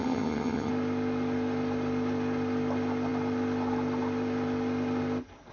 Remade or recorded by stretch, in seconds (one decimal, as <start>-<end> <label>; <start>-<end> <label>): 0.0-0.7 remade; 0.7-5.5 recorded